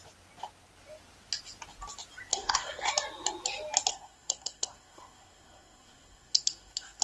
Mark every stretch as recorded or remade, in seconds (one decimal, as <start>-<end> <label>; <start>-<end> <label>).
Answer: 0.0-2.3 recorded; 2.3-2.9 remade; 2.9-3.9 recorded; 3.9-7.0 remade